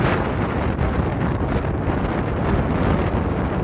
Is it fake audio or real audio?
real